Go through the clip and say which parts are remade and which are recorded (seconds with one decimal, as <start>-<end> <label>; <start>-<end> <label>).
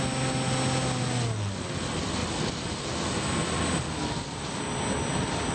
0.0-5.5 recorded